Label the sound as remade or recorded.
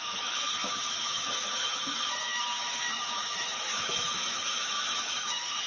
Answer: remade